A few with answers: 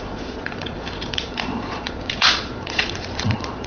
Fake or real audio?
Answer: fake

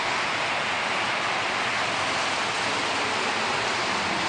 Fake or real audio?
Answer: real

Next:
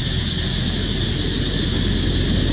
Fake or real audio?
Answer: real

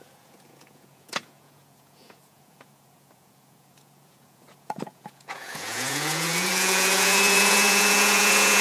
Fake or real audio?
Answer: fake